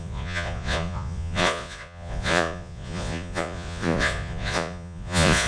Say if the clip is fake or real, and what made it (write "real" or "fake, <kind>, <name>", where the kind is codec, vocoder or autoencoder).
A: fake, vocoder, Vocos